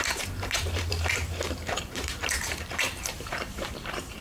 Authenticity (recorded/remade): remade